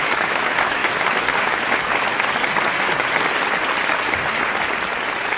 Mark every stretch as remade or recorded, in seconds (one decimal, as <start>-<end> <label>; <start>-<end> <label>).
0.0-0.8 remade; 0.8-1.5 recorded; 1.5-2.1 remade; 2.1-5.4 recorded